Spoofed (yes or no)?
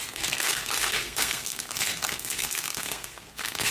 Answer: yes